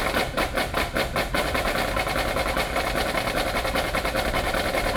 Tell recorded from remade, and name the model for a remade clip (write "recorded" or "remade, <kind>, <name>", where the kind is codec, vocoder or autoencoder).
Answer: recorded